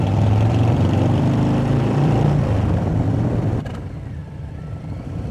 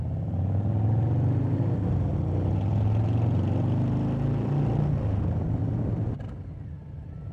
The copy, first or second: first